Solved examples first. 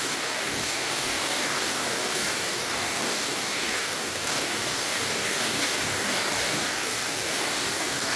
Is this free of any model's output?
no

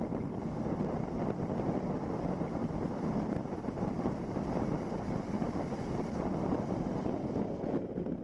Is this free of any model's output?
yes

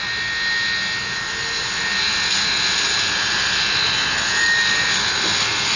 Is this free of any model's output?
yes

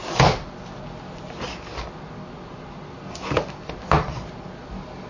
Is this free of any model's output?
yes